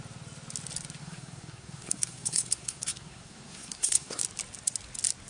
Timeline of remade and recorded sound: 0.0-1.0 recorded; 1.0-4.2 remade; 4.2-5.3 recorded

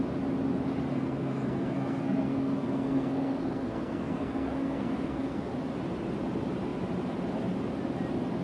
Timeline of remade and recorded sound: 0.0-0.9 recorded; 0.9-5.5 remade; 5.5-8.4 recorded